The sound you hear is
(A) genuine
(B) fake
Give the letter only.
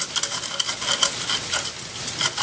A